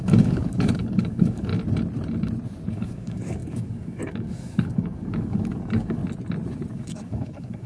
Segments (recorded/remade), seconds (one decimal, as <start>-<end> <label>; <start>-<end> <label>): 0.0-1.5 remade; 1.5-2.7 recorded; 2.7-6.0 remade; 6.0-6.7 recorded; 6.7-7.7 remade